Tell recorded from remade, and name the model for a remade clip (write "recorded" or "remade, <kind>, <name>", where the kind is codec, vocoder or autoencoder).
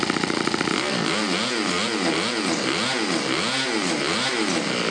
recorded